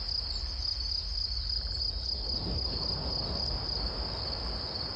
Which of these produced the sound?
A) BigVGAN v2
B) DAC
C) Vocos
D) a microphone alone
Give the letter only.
D